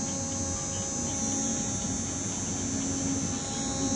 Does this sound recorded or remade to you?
recorded